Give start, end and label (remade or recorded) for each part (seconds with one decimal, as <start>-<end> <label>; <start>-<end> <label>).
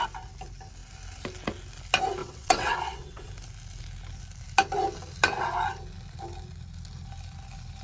0.0-2.2 recorded; 2.2-3.3 remade; 3.3-7.8 recorded